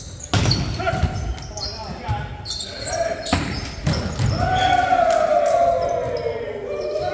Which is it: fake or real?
real